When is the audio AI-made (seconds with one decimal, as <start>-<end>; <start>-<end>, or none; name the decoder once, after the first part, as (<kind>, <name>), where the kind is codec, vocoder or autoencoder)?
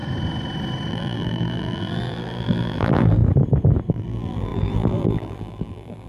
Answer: 0.9-3.2 (vocoder, BigVGAN v2); 3.9-6.1